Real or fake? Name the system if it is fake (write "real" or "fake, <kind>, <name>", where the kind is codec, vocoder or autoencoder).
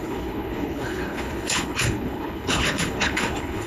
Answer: fake, codec, HILCodec